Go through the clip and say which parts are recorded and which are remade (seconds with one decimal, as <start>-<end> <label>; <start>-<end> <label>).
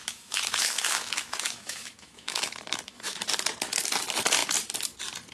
0.0-3.2 remade; 3.2-5.3 recorded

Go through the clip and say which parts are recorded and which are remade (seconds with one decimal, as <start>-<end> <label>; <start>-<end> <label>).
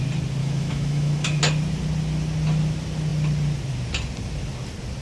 0.0-0.4 recorded; 0.4-1.4 remade; 1.4-5.0 recorded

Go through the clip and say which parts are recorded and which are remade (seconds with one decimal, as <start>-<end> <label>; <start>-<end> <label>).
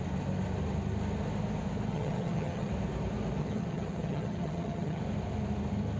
0.0-1.9 recorded; 1.9-2.7 remade; 2.7-3.4 recorded; 3.4-5.0 remade; 5.0-6.0 recorded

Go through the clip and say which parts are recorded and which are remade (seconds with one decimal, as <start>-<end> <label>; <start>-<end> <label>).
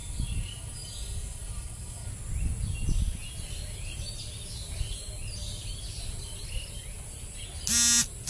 0.0-2.1 remade; 2.1-8.3 recorded